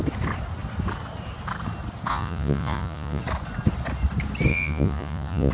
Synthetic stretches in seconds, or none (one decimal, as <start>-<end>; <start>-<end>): 2.1-3.2; 4.5-5.5